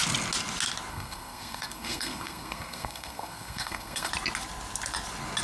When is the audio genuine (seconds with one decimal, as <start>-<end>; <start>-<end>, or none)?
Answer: 0.0-0.9; 4.1-5.4

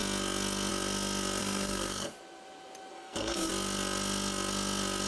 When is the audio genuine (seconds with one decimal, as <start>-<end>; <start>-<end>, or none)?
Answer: 0.0-1.4; 2.1-2.9; 3.5-5.1

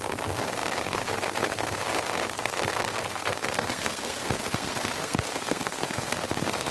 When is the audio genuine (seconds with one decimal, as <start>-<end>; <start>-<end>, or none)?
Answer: none

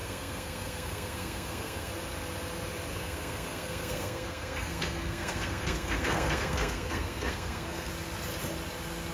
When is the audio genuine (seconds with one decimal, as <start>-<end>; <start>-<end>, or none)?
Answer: 1.9-2.9; 7.9-9.1

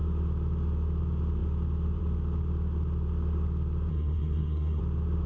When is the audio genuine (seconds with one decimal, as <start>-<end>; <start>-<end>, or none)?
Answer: 0.0-3.9; 4.8-5.3

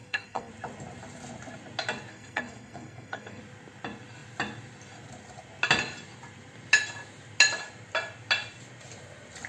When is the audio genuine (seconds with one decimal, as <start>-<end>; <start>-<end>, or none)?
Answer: 0.5-2.1; 3.4-9.5

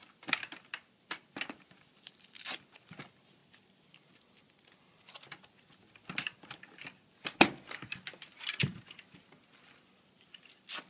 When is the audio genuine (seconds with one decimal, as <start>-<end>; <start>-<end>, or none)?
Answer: 0.0-10.9